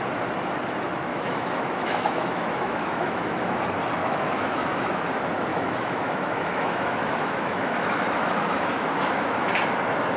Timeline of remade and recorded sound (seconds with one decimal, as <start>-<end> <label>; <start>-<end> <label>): 0.0-1.1 recorded; 1.1-3.6 remade; 3.6-4.0 recorded; 4.0-5.0 remade; 5.0-5.5 recorded; 5.5-9.5 remade; 9.5-10.2 recorded